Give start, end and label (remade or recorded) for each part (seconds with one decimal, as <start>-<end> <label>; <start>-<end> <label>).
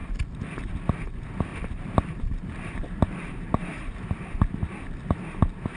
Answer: 0.0-1.5 recorded; 1.5-4.7 remade; 4.7-5.8 recorded